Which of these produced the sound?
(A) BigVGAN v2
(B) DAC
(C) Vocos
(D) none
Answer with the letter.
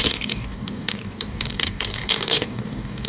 B